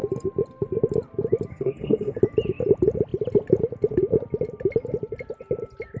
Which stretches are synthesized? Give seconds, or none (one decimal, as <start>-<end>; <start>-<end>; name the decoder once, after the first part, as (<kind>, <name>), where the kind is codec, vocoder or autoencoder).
1.5-2.2 (codec, SNAC)